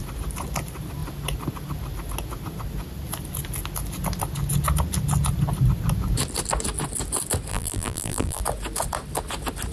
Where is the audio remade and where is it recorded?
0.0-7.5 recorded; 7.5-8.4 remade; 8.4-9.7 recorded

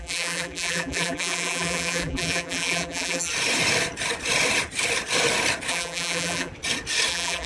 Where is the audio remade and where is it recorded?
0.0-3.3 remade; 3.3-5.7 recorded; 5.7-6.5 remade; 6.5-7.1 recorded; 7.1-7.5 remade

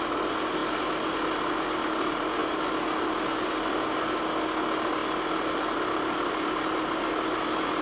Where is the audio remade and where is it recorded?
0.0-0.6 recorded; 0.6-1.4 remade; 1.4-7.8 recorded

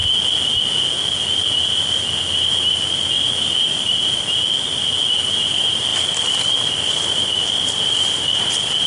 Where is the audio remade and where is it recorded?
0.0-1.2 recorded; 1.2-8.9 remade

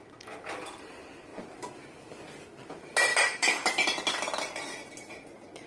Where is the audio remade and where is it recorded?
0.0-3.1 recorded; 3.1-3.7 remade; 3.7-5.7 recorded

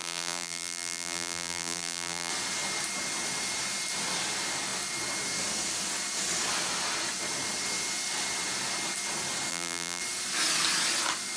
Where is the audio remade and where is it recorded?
0.0-2.3 remade; 2.3-9.5 recorded; 9.5-10.0 remade; 10.0-11.4 recorded

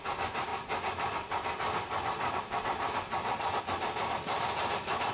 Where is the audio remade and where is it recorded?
0.0-5.1 recorded

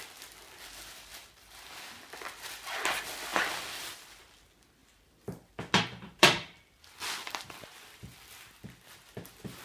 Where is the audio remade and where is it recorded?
0.0-3.3 recorded; 3.3-4.2 remade; 4.2-4.8 recorded; 4.8-8.3 remade; 8.3-9.6 recorded